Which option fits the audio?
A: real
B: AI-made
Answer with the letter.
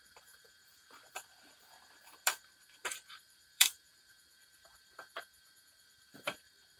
B